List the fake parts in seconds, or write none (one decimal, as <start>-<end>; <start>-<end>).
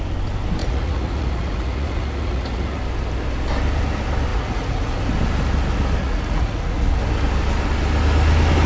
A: 0.6-2.8; 4.3-5.0; 6.0-7.0